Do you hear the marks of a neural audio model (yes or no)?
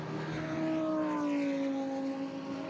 no